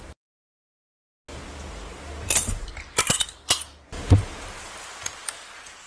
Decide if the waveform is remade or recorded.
recorded